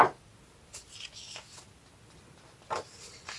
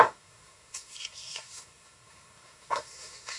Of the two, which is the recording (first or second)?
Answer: first